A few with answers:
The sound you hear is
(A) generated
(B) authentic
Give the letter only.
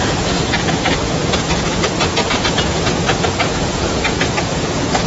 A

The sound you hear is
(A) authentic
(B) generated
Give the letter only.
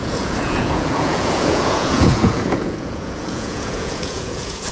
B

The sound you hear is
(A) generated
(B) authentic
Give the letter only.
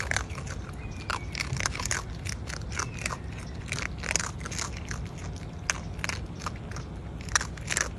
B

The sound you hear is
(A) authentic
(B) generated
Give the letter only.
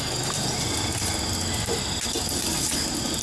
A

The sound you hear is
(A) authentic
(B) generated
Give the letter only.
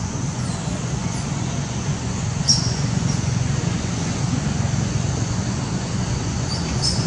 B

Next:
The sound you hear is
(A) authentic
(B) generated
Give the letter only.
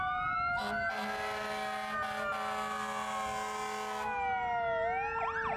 A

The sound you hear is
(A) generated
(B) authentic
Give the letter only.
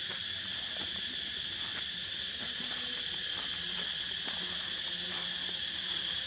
B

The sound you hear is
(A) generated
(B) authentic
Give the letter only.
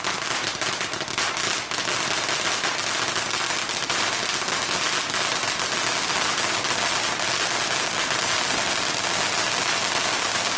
B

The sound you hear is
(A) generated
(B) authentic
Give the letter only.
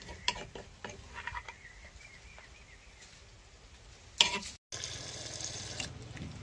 B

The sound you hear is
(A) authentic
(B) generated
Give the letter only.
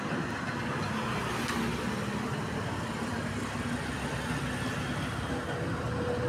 A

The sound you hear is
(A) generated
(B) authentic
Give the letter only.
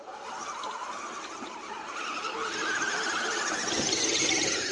B